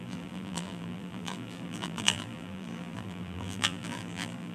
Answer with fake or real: fake